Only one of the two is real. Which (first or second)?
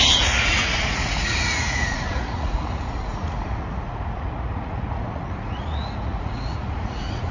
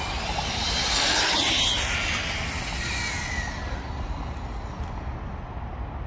second